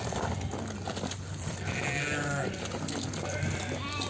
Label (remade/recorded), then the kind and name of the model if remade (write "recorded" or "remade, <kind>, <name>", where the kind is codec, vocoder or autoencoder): recorded